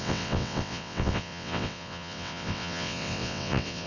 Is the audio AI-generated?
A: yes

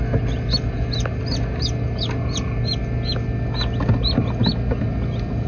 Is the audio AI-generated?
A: no